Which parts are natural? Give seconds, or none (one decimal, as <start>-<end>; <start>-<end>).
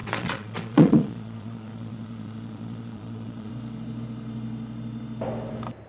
3.5-5.9